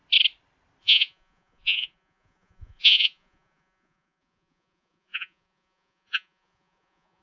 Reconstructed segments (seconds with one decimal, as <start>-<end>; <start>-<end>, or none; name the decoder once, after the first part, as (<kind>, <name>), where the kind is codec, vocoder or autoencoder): 0.8-7.2 (vocoder, Vocos)